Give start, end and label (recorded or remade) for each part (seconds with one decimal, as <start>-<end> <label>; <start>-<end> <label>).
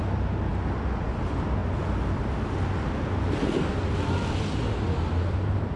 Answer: 0.0-5.8 recorded